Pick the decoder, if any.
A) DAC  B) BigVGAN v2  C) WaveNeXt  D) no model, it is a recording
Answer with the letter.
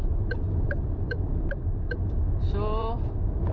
B